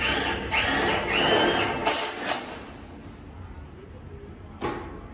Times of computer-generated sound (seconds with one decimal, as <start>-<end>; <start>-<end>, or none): none